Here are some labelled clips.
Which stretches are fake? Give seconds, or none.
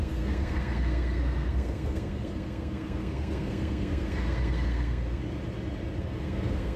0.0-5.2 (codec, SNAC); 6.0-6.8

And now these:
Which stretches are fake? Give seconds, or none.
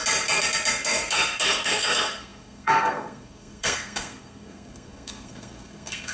0.7-6.1 (codec, SNAC)